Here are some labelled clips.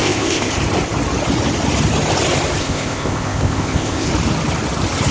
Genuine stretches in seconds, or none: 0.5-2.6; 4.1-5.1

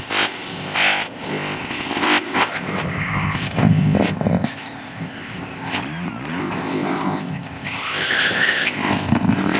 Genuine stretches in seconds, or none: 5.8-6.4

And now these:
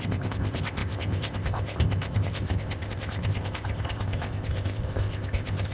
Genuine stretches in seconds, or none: none

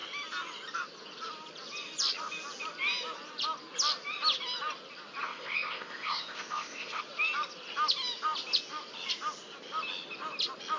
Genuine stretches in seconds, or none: 0.0-5.2; 7.0-10.8